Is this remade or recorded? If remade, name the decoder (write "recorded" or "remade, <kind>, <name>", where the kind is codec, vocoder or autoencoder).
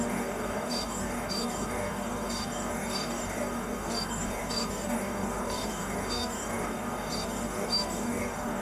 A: remade, codec, DAC